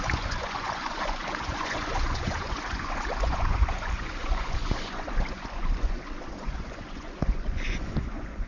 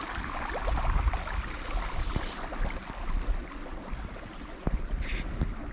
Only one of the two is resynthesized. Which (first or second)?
first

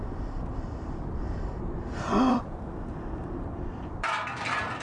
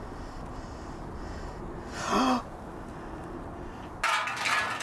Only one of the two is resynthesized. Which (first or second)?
first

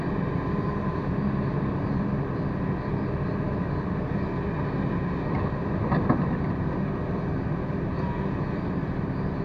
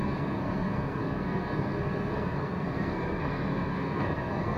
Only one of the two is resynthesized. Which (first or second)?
second